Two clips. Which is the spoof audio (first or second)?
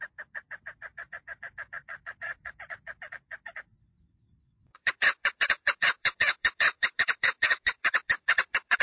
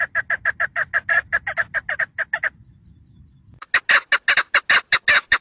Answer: first